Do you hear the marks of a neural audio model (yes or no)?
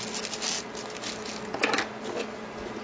no